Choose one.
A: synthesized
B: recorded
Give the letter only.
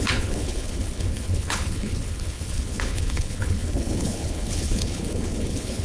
A